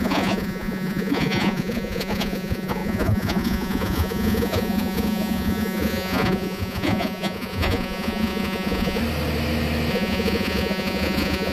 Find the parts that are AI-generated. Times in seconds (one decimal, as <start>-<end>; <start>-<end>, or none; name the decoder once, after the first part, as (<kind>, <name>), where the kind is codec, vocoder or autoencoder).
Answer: 0.0-9.0 (vocoder, Vocos); 9.9-11.5